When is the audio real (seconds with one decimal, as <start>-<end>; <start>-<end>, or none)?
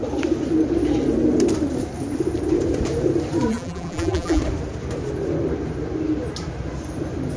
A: 0.0-3.5; 4.4-7.4